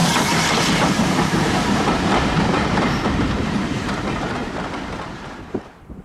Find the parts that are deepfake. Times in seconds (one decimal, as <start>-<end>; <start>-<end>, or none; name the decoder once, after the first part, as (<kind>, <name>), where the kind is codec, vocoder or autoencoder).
0.0-4.4 (vocoder, BigVGAN v2); 5.1-6.0